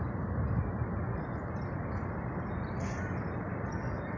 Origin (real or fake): real